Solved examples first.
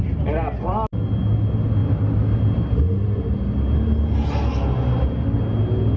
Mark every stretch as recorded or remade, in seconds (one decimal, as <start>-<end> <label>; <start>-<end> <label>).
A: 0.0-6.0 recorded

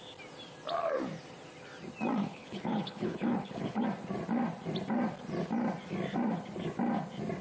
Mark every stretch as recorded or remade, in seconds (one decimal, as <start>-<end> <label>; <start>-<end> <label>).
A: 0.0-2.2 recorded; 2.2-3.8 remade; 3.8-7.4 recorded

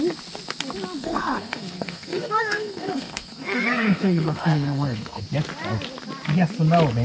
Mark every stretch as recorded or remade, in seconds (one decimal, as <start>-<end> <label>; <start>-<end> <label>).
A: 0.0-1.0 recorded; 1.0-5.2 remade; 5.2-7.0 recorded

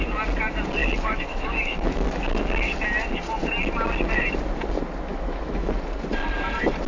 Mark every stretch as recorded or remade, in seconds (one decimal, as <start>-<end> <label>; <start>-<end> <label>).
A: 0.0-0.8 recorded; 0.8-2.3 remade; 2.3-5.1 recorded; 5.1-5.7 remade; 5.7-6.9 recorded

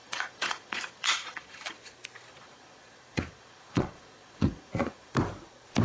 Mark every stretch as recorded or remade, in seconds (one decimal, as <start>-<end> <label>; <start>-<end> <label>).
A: 0.0-1.8 remade; 1.8-2.3 recorded; 2.3-5.1 remade; 5.1-5.8 recorded

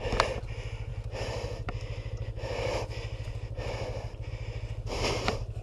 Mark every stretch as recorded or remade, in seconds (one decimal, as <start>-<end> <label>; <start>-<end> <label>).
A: 0.0-5.6 recorded

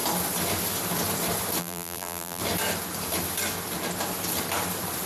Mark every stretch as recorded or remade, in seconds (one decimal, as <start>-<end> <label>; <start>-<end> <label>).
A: 0.0-1.6 recorded; 1.6-2.4 remade; 2.4-5.1 recorded